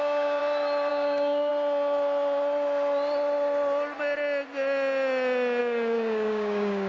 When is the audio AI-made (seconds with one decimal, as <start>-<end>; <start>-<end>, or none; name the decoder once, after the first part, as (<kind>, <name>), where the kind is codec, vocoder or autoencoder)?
0.0-0.4 (codec, DAC); 0.9-1.5; 5.6-6.9